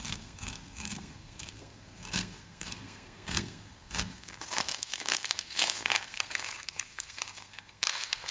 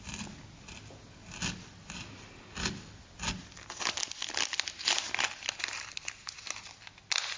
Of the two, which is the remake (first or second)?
first